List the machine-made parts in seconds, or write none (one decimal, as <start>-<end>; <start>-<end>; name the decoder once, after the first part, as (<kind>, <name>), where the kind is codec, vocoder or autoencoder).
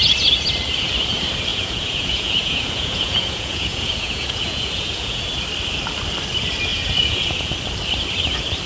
1.5-5.2 (vocoder, Vocos); 6.7-7.5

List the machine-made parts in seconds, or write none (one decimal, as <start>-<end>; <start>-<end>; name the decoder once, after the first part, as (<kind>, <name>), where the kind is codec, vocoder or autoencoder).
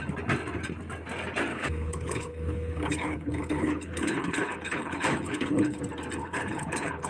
1.5-5.8 (codec, HILCodec); 6.2-7.1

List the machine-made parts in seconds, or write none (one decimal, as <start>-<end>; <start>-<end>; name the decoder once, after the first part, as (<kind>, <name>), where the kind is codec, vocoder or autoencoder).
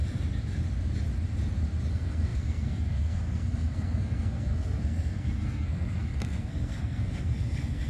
1.9-7.9 (codec, SNAC)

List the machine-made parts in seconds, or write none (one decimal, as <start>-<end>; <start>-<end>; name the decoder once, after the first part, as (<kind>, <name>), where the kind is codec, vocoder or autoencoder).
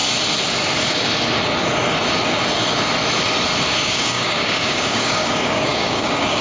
3.8-6.4 (codec, DAC)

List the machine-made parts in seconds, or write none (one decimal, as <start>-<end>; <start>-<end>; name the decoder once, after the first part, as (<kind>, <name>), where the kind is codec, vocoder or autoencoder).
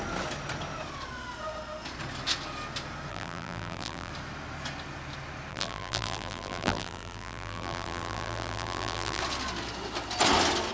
3.1-4.1 (vocoder, BigVGAN v2); 5.5-9.2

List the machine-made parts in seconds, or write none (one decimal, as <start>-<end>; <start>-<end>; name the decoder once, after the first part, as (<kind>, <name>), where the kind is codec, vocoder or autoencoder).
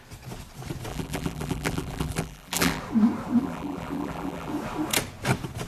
0.9-2.8 (vocoder, BigVGAN v2); 3.4-4.5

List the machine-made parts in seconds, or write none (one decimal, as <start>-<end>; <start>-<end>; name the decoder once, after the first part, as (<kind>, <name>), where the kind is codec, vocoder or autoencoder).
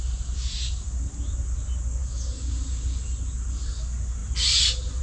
none